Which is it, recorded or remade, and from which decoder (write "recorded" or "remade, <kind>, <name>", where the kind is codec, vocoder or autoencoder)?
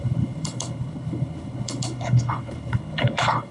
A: remade, codec, HILCodec